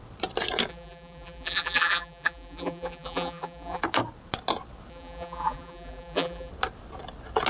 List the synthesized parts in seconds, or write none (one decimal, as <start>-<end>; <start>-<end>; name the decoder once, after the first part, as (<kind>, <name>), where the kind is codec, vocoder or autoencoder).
0.7-3.8 (vocoder, BigVGAN v2); 4.9-6.5